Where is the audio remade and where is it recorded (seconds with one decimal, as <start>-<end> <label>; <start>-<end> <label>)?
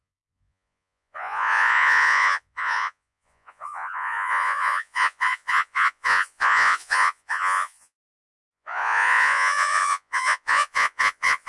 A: 0.0-11.5 remade